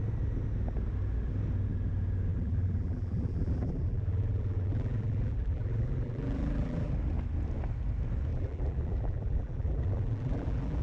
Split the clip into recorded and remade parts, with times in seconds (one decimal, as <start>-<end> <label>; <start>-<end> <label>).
0.0-2.3 recorded; 2.3-6.9 remade; 6.9-8.3 recorded; 8.3-10.8 remade